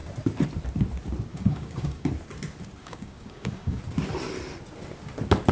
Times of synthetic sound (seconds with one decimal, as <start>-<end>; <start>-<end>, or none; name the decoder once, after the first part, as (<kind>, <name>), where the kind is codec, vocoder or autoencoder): 1.3-2.1 (codec, DAC); 2.8-3.8